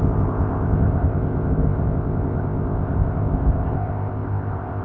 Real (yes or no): no